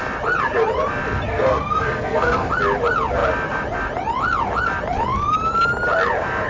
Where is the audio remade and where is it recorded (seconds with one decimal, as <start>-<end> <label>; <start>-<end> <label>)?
0.0-1.3 recorded; 1.3-2.5 remade; 2.5-6.5 recorded